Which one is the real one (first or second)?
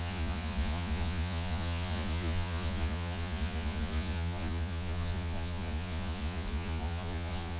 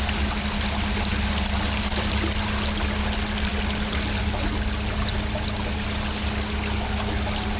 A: second